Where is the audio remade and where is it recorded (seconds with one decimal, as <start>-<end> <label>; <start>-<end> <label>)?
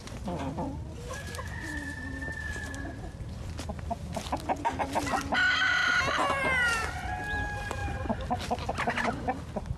0.0-9.8 recorded